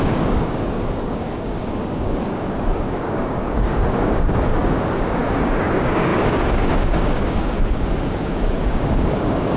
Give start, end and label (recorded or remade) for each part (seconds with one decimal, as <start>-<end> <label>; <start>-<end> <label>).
0.0-9.6 remade